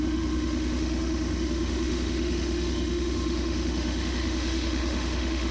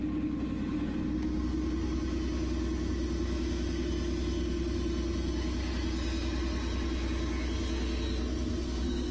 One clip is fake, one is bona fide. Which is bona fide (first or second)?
second